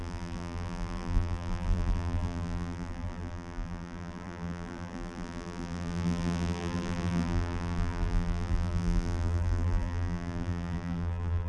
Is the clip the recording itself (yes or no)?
no